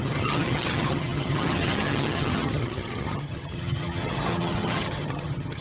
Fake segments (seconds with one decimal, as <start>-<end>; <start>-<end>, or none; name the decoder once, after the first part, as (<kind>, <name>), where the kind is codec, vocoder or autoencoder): 0.0-5.6 (vocoder, HiFi-GAN)